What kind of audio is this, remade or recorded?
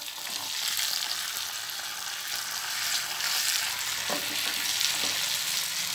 recorded